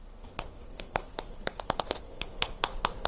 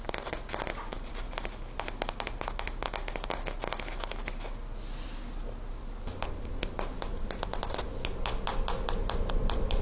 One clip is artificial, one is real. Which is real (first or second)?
second